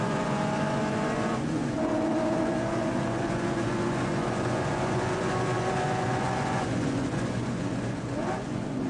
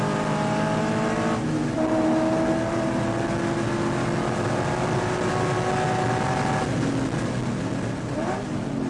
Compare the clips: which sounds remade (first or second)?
first